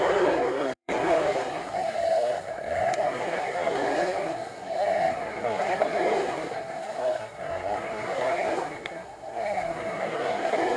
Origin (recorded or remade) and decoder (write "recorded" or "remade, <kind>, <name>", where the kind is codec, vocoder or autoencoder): remade, codec, SNAC